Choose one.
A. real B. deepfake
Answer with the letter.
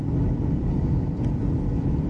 B